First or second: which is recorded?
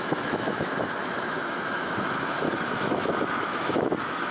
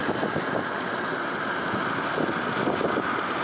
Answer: second